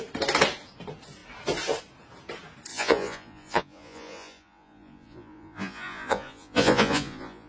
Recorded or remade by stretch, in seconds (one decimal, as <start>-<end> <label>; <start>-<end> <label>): 0.0-2.7 recorded; 2.7-7.5 remade